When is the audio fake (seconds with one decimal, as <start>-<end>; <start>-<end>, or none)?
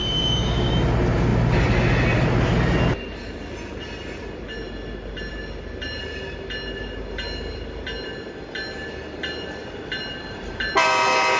0.0-0.7